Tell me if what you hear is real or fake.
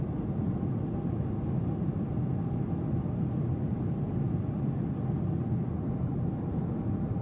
real